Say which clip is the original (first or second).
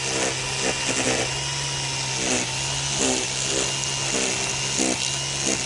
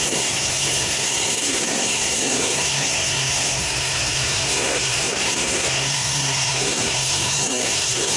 first